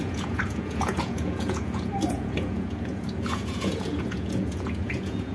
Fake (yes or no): yes